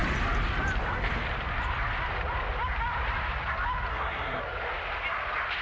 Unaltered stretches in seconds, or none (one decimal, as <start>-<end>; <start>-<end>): 0.0-3.9; 4.4-5.6